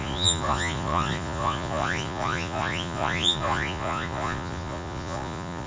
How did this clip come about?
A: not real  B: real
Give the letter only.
A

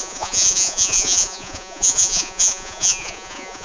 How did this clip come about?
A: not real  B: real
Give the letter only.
A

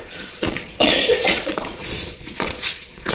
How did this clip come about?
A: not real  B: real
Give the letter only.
A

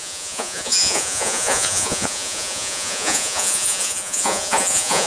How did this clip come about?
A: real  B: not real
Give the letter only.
B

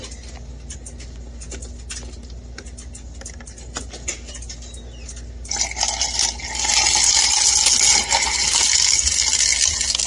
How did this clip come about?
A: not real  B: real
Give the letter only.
B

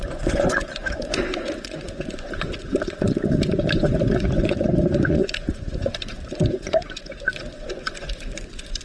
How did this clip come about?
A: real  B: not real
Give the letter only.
B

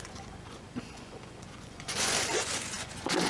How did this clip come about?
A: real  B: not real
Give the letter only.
B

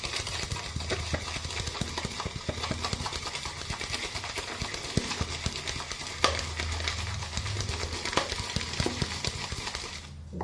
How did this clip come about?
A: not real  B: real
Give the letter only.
B